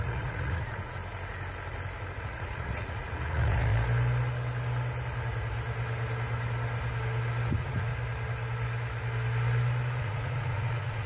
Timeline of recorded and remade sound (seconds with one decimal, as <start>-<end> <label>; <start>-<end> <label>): 0.0-1.0 remade; 1.0-2.2 recorded; 2.2-3.7 remade; 3.7-7.5 recorded; 7.5-7.9 remade; 7.9-10.0 recorded; 10.0-11.1 remade